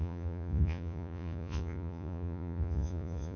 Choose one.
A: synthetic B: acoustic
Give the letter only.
A